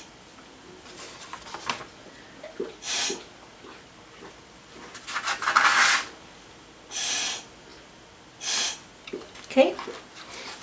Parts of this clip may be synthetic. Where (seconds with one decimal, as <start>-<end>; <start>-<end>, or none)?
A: none